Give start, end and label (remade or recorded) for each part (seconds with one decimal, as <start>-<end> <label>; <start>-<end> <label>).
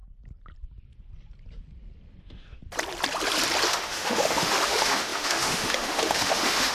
0.0-2.2 recorded; 2.2-2.6 remade; 2.6-3.7 recorded; 3.7-6.7 remade